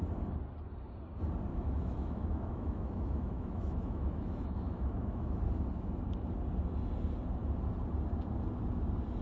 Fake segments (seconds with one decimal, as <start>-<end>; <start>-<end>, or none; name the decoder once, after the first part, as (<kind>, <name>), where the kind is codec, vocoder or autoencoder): 1.5-5.4 (autoencoder, DAC-VAE)